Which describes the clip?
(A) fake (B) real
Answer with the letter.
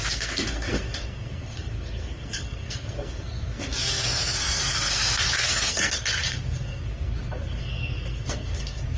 A